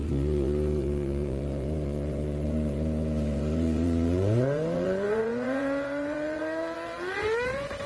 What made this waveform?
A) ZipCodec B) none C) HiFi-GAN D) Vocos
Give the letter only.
D